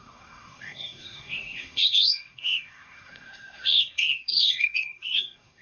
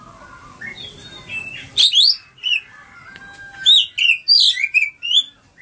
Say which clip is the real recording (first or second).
second